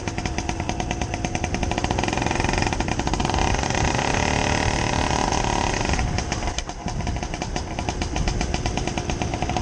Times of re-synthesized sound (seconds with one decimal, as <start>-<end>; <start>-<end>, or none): 0.0-9.6